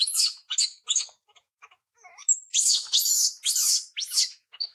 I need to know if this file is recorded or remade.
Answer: remade